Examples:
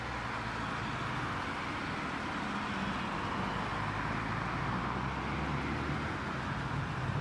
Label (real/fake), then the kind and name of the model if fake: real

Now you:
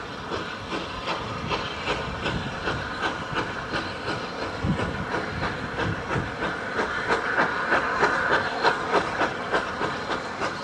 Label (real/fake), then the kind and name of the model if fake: real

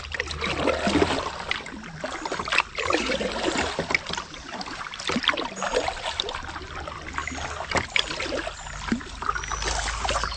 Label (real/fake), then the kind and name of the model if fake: real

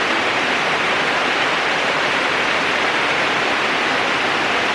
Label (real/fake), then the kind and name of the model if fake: real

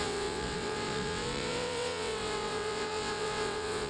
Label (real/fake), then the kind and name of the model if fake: fake, vocoder, WaveNeXt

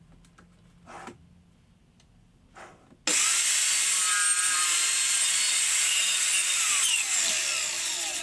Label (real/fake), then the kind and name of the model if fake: real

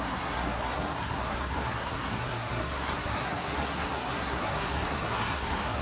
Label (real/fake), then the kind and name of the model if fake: fake, codec, SNAC